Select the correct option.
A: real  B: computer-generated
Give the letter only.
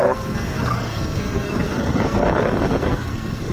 B